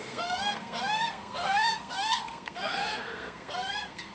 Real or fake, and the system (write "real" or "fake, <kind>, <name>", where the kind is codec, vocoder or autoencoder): fake, codec, SNAC